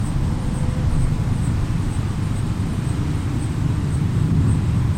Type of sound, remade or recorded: remade